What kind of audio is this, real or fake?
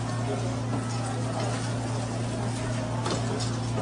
real